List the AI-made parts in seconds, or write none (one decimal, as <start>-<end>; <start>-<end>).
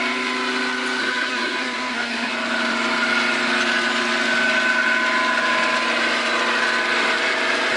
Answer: 1.0-2.3